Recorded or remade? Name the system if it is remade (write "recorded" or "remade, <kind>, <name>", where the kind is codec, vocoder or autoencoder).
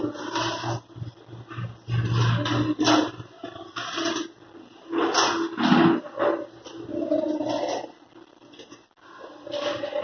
recorded